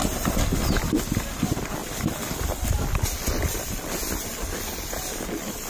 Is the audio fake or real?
fake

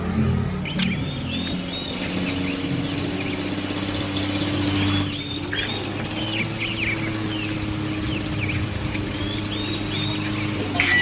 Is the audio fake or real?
real